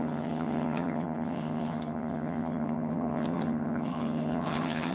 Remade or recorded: remade